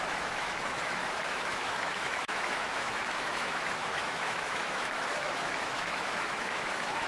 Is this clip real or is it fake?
fake